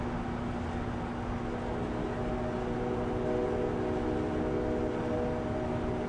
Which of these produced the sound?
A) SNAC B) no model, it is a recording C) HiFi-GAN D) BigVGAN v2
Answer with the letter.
B